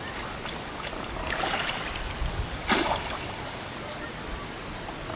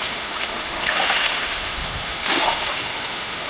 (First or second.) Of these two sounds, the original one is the first